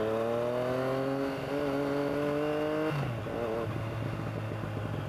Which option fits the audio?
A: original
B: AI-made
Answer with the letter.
A